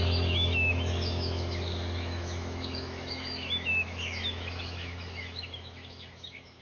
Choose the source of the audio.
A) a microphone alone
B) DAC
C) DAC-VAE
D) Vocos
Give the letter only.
C